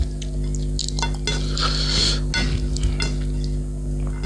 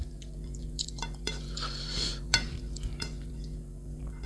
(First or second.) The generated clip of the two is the second